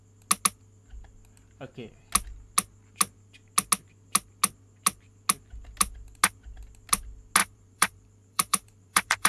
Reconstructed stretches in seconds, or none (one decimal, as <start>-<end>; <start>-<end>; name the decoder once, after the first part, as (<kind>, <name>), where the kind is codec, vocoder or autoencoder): 7.4-9.3 (vocoder, BigVGAN v2)